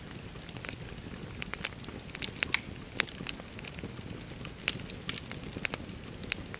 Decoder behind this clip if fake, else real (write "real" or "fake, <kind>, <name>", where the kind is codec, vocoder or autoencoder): real